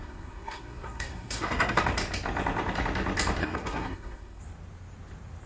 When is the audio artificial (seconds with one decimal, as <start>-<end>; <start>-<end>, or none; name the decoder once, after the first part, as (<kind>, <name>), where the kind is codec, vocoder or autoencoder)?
0.0-1.8 (codec, SNAC); 3.4-4.4